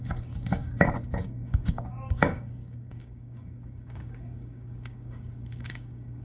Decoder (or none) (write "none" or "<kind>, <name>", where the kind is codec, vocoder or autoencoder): codec, DAC